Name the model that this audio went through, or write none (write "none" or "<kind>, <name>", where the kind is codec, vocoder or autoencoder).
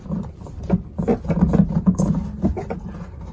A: none